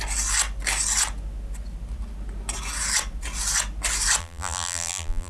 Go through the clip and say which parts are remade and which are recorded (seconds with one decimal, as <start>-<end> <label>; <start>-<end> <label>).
0.0-4.2 recorded; 4.2-5.3 remade